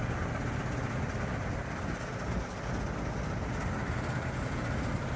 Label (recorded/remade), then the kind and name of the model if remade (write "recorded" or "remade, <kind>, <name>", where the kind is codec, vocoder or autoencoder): recorded